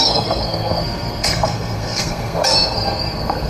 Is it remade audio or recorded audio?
remade